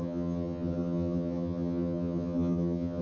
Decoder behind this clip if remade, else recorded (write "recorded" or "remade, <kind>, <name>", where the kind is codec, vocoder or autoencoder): remade, vocoder, HiFi-GAN